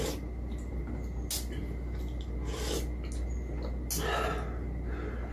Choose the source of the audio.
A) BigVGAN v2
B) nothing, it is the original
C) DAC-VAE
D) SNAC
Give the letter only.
B